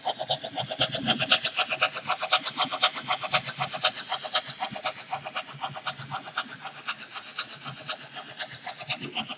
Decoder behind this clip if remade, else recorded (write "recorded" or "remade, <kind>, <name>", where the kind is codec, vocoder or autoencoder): recorded